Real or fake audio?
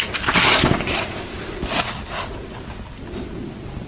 real